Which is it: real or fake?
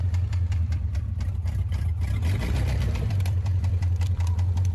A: fake